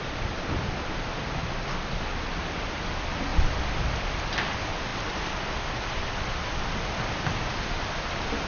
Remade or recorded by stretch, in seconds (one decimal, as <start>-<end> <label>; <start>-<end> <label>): 0.0-1.4 remade; 1.4-2.0 recorded; 2.0-3.3 remade; 3.3-4.0 recorded; 4.0-8.5 remade